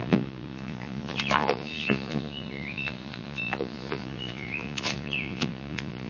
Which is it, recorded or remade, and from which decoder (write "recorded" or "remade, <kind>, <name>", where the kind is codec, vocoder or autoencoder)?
remade, vocoder, Vocos